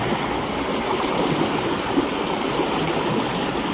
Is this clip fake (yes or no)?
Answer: no